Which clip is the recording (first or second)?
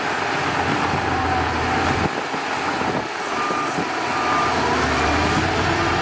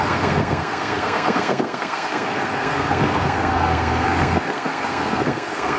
first